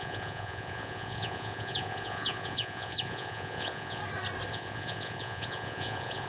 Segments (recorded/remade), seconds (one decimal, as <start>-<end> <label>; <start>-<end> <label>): 0.0-4.0 remade; 4.0-4.5 recorded; 4.5-6.3 remade